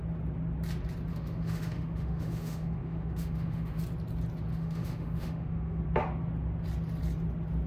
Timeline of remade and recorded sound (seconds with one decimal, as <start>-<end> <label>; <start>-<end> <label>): 0.0-1.1 recorded; 1.1-3.8 remade; 3.8-4.5 recorded; 4.5-5.8 remade; 5.8-7.7 recorded